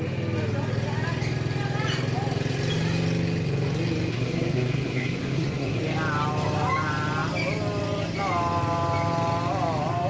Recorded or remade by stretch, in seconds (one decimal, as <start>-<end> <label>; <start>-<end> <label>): 0.0-4.1 recorded; 4.1-5.8 remade; 5.8-10.1 recorded